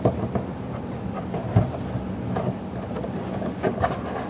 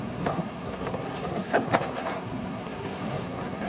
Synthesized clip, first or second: second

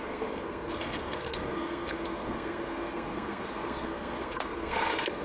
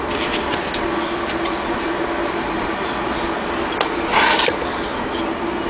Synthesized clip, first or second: first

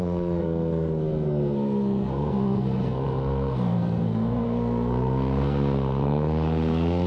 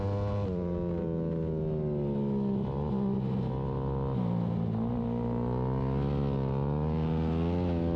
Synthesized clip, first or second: first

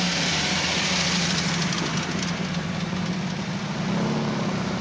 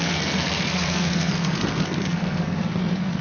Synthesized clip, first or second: second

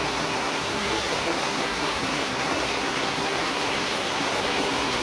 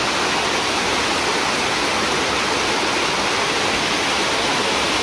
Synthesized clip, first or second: first